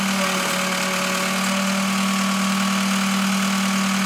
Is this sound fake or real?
real